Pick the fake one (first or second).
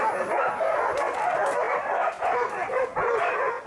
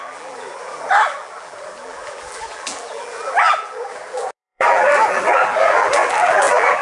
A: second